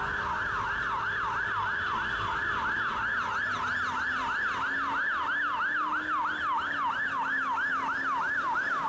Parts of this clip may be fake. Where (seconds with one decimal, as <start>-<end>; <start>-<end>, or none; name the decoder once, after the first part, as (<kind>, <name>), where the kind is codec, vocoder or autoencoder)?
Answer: none